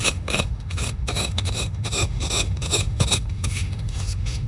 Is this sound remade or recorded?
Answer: remade